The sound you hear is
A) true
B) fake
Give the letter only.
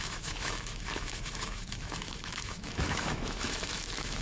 B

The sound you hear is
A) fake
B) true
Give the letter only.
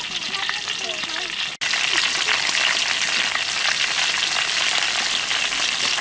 B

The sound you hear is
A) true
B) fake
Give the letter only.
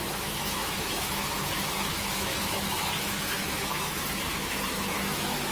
B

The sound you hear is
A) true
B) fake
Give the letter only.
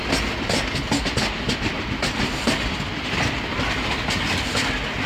A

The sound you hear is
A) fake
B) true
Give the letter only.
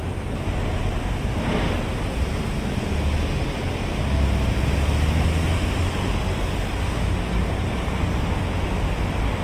B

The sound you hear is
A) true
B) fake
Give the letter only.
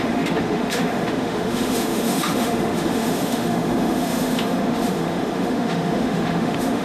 B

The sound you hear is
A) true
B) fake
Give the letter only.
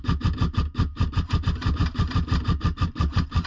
A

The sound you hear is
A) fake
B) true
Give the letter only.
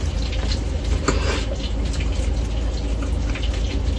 B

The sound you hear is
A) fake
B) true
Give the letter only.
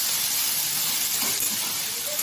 B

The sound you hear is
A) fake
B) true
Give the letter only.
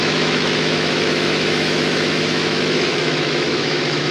A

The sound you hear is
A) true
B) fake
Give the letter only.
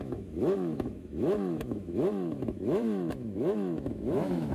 B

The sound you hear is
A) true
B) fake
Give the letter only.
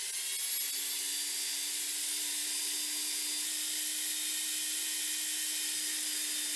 A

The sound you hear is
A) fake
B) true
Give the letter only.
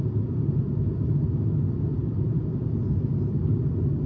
B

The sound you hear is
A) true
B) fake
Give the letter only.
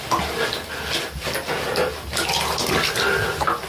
A